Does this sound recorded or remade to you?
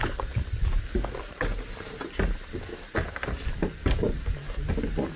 recorded